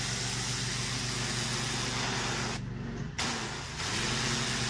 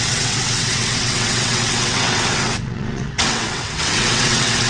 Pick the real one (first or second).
first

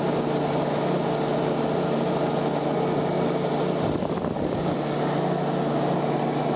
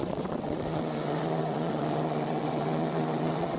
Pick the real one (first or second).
first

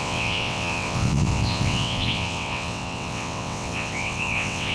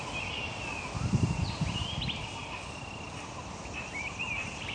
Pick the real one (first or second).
second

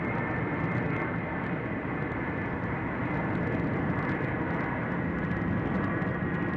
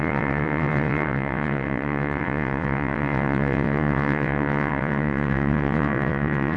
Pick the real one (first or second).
first